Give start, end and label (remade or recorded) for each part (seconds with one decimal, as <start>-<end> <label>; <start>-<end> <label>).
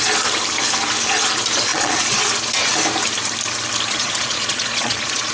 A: 0.0-1.7 recorded; 1.7-2.2 remade; 2.2-3.9 recorded; 3.9-5.3 remade